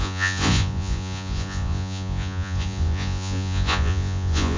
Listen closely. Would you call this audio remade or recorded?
remade